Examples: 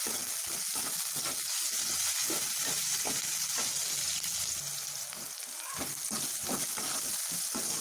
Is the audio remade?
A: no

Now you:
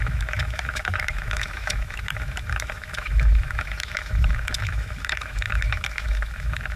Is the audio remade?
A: yes